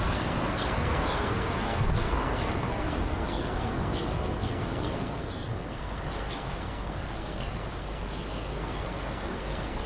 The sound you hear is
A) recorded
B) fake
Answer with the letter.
B